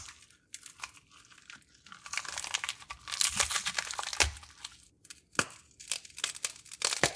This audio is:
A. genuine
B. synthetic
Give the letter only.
A